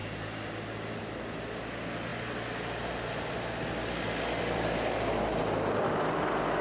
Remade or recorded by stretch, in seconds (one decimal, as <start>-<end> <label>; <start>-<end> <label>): 0.0-6.6 recorded